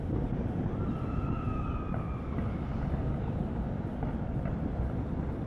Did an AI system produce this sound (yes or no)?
no